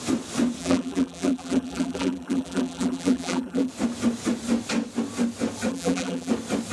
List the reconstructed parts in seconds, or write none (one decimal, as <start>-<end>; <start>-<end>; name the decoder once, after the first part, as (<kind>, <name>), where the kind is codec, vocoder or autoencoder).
0.6-3.7 (vocoder, BigVGAN v2); 5.7-6.3